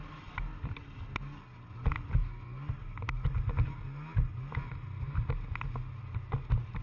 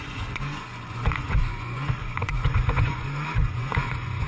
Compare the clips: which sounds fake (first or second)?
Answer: second